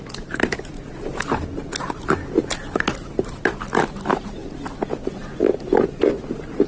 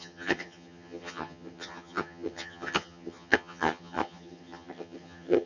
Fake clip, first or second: second